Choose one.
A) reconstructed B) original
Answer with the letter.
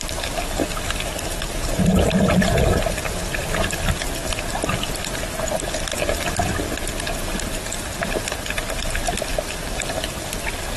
B